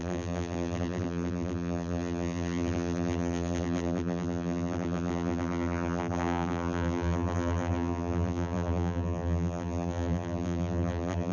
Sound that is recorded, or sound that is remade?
remade